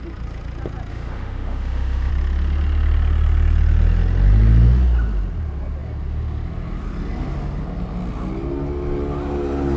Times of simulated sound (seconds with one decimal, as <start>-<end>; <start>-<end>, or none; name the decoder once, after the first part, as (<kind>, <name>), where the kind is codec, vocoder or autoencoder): 0.9-2.1 (autoencoder, DAC-VAE)